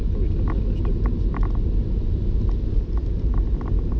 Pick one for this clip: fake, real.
real